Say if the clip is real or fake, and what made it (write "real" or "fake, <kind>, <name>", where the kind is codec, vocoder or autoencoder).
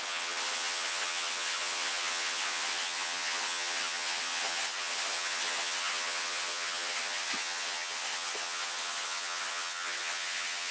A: fake, vocoder, HiFi-GAN